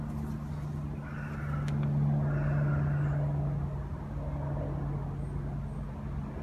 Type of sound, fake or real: real